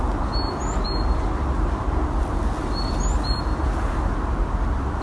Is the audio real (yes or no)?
yes